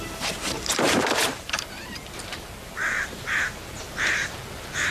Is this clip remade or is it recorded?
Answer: remade